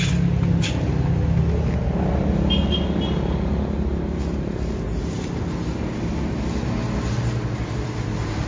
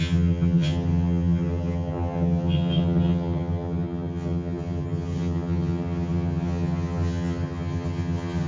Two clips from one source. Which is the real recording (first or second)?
first